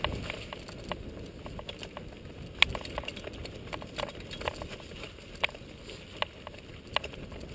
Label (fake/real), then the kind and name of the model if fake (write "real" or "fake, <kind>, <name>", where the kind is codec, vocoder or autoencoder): real